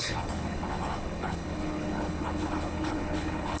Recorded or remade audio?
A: remade